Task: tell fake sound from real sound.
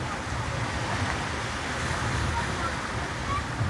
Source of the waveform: real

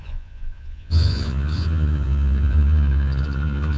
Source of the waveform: fake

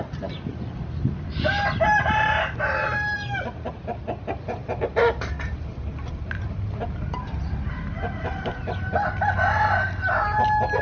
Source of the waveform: real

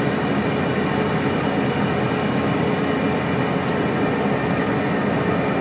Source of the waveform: real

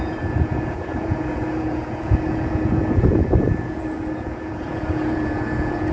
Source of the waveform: fake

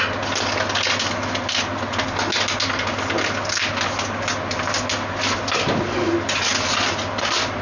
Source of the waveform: real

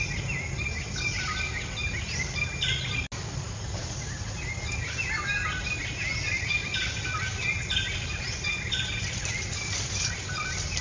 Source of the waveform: real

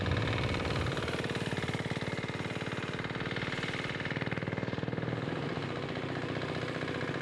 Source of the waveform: real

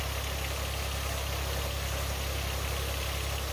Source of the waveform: real